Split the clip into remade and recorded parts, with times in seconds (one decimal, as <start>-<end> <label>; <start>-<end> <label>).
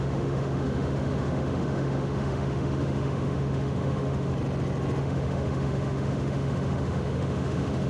0.0-4.3 remade; 4.3-5.0 recorded; 5.0-7.9 remade